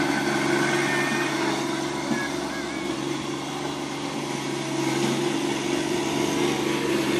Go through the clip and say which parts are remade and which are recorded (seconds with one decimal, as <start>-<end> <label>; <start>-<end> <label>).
0.0-7.2 recorded